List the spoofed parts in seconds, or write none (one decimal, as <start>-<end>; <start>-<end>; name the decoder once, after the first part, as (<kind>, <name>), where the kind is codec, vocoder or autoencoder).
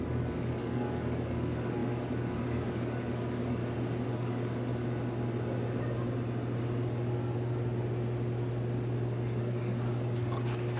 0.0-3.6 (codec, DAC); 4.1-4.7; 9.4-10.8